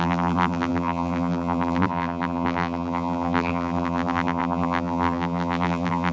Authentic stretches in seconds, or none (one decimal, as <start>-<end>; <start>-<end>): none